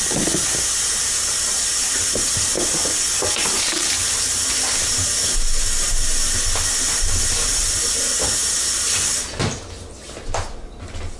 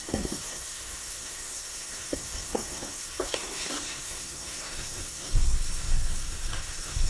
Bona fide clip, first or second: first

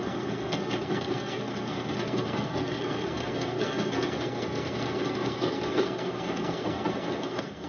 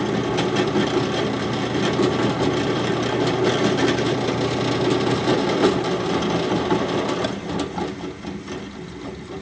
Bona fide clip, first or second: second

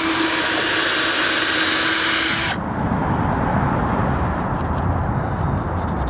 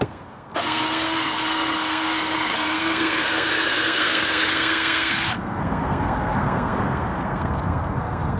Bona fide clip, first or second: first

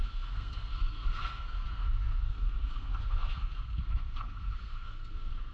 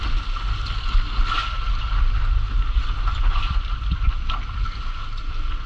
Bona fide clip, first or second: second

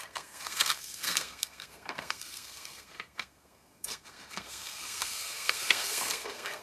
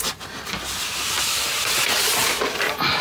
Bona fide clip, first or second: second